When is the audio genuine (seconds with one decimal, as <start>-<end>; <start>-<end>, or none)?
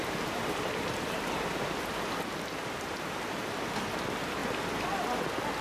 3.4-5.6